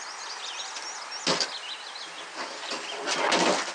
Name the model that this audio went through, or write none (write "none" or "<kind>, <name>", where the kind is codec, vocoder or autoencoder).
none